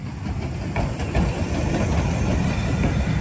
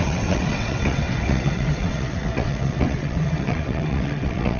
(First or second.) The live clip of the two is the first